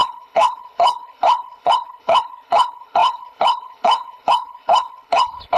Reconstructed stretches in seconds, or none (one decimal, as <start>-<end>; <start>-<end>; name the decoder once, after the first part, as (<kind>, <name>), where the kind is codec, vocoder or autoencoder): 0.0-5.6 (codec, HILCodec)